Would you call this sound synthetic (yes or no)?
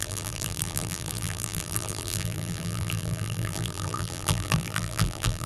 yes